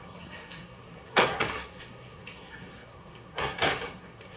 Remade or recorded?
remade